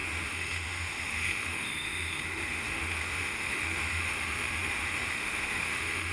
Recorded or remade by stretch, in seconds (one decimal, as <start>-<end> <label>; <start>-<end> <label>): 0.0-6.1 remade